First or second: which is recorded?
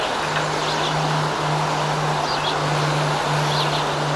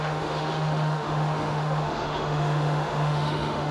first